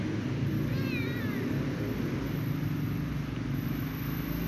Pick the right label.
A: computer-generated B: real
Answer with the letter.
B